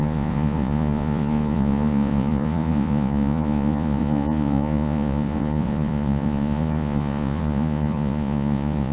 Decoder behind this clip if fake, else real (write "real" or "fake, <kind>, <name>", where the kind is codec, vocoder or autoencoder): fake, vocoder, Vocos